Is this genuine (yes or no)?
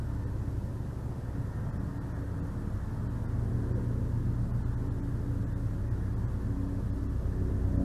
yes